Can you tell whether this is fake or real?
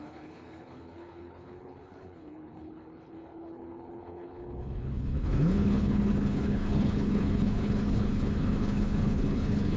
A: fake